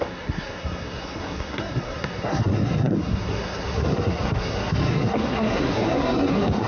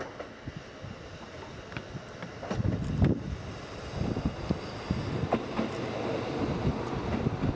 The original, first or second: second